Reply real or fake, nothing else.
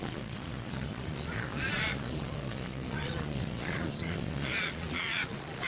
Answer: fake